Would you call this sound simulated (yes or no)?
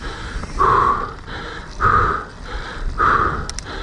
no